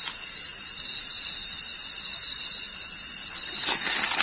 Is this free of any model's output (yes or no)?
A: yes